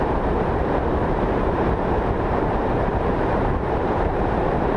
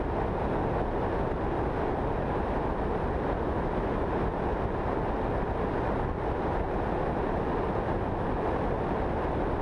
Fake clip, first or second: first